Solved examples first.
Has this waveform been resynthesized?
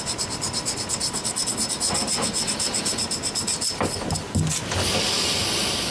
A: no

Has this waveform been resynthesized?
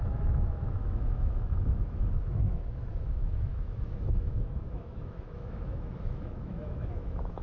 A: yes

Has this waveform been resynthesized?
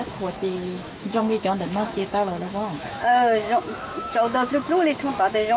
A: yes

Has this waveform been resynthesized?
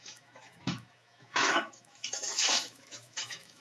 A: yes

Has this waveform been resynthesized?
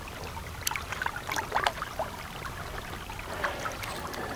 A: no